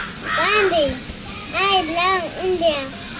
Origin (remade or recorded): recorded